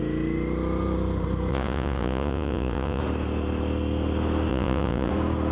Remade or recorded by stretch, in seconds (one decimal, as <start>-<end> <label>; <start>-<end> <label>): 0.0-1.5 recorded; 1.5-3.0 remade; 3.0-4.5 recorded; 4.5-5.1 remade; 5.1-5.5 recorded